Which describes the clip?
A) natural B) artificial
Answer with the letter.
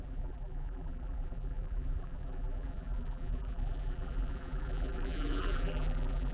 B